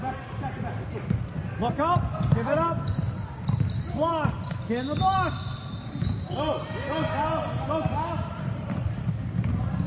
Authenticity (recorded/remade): recorded